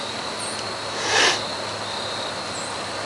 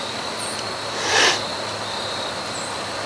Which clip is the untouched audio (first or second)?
first